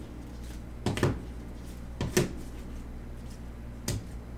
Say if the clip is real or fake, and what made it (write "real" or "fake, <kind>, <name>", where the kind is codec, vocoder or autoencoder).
real